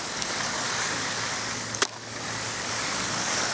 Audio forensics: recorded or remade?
remade